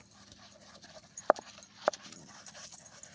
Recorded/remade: remade